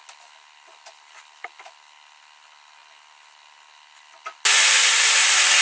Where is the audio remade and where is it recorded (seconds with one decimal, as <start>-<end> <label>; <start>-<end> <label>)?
0.0-5.6 recorded